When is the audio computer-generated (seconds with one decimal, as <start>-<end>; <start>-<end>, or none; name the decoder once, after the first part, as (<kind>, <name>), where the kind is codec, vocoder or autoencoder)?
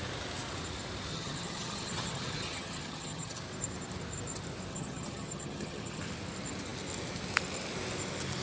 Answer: 1.1-3.4 (vocoder, HiFi-GAN); 4.7-6.0